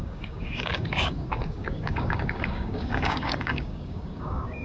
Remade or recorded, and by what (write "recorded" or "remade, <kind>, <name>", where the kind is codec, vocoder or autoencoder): remade, codec, DAC